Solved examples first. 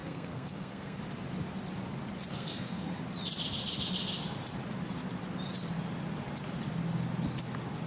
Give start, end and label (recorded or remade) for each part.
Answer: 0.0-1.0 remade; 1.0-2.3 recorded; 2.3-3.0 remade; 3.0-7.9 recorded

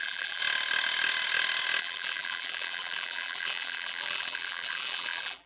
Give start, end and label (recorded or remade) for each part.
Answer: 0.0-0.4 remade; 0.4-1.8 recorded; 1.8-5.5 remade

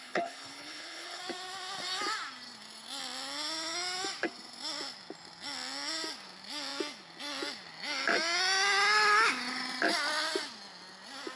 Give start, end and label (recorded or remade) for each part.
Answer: 0.0-1.2 remade; 1.2-11.4 recorded

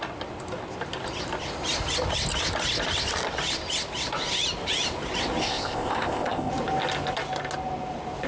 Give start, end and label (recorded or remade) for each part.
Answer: 0.0-5.4 recorded; 5.4-6.5 remade; 6.5-8.3 recorded

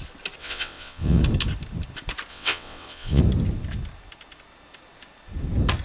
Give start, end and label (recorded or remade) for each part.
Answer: 0.0-0.4 recorded; 0.4-1.2 remade; 1.2-2.3 recorded; 2.3-3.2 remade; 3.2-5.8 recorded

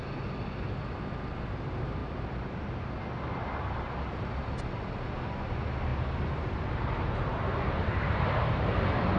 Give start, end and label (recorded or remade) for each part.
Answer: 0.0-2.0 recorded; 2.0-2.6 remade; 2.6-7.9 recorded; 7.9-9.2 remade

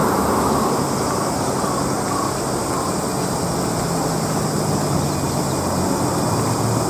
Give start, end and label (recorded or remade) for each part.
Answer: 0.0-6.9 recorded